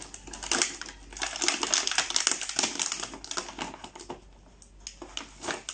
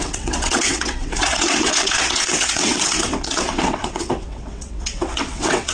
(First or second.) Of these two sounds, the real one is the first